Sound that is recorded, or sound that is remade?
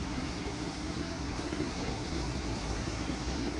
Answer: remade